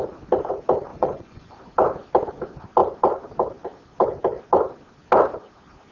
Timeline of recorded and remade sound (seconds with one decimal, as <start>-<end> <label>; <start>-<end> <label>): 0.0-0.9 recorded; 0.9-1.6 remade; 1.6-5.9 recorded